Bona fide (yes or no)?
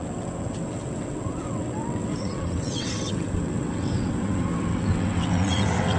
no